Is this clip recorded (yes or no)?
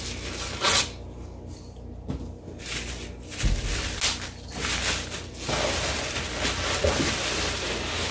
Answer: yes